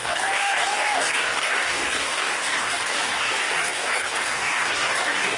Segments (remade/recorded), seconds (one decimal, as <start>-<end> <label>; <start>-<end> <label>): 0.0-5.4 remade

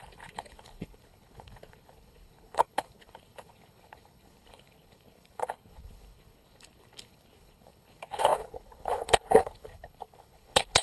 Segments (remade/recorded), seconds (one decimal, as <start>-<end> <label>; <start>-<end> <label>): 0.0-10.8 remade

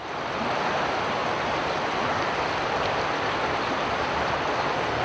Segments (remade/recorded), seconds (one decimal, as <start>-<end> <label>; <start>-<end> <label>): 0.0-5.0 recorded

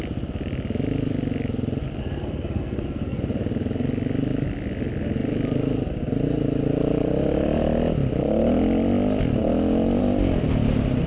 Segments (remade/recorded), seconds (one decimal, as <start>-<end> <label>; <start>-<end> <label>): 0.0-2.0 recorded; 2.0-3.2 remade; 3.2-11.1 recorded

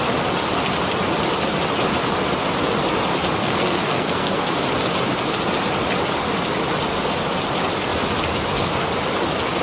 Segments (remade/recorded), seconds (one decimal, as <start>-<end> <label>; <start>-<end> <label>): 0.0-3.4 recorded; 3.4-4.5 remade; 4.5-9.6 recorded

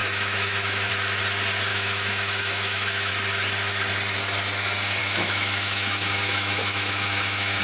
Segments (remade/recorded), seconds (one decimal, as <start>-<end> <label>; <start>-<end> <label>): 0.0-0.9 remade; 0.9-1.7 recorded; 1.7-3.1 remade; 3.1-5.0 recorded; 5.0-7.6 remade

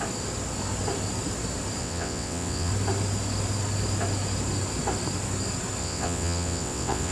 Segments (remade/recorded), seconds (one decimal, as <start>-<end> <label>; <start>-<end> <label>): 0.0-1.8 recorded; 1.8-2.7 remade; 2.7-5.8 recorded; 5.8-7.1 remade